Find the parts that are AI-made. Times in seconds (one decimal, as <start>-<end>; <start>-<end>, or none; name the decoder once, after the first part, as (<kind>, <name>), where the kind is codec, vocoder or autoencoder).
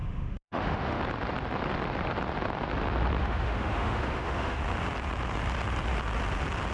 0.0-1.0 (autoencoder, DAC-VAE); 3.2-4.6